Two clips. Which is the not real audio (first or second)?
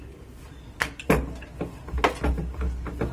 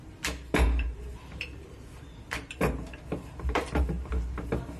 second